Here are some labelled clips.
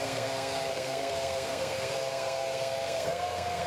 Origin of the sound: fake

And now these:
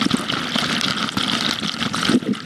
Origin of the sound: real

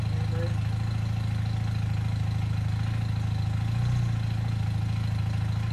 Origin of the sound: real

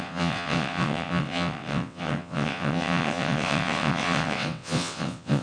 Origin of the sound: fake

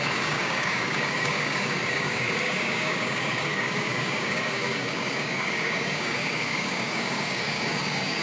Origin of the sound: fake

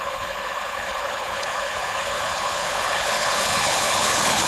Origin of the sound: fake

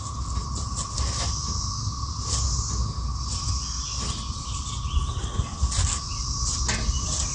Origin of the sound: real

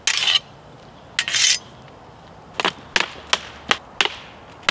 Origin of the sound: real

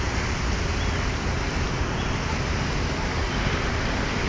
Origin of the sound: real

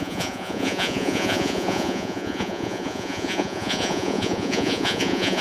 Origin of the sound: fake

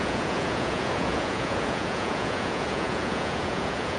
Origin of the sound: fake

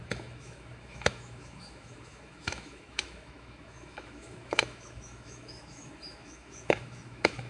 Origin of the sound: fake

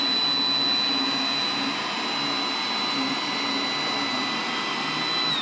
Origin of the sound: real